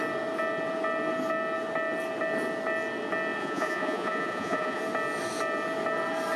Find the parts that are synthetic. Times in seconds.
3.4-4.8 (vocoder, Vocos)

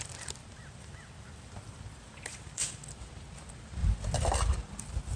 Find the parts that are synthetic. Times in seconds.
0.4-2.9 (vocoder, BigVGAN v2)

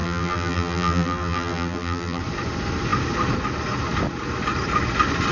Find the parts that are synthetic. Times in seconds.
0.0-2.2 (vocoder, BigVGAN v2)

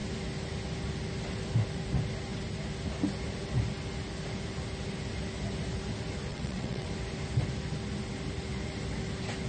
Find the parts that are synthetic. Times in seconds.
6.3-6.9 (vocoder, WaveNeXt)

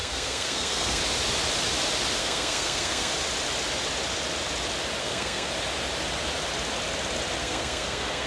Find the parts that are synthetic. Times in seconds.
0.0-1.0 (codec, SNAC); 2.2-3.1; 5.0-5.5; 7.4-8.3

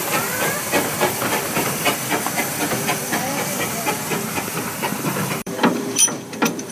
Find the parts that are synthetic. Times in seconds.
0.0-4.0 (vocoder, BigVGAN v2); 4.5-6.7

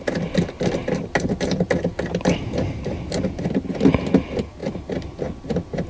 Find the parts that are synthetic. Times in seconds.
0.8-1.4 (vocoder, BigVGAN v2); 1.9-2.9

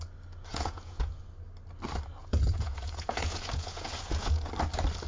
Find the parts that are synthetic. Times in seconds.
0.5-1.2 (vocoder, Vocos); 2.2-4.5